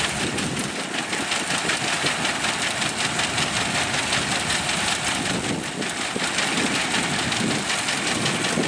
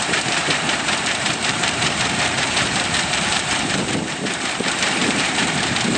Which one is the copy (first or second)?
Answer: second